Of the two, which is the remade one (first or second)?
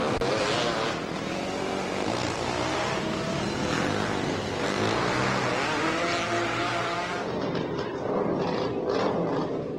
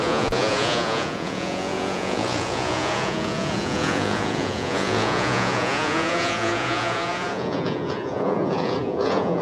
second